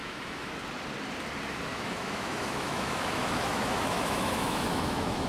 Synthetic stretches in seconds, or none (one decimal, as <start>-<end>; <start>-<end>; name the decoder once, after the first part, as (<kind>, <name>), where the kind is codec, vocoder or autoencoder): 0.0-0.5 (autoencoder, DAC-VAE); 1.7-5.3